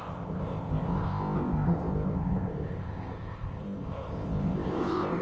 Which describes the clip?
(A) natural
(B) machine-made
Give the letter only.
B